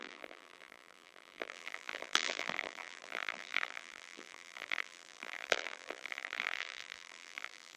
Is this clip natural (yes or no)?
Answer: no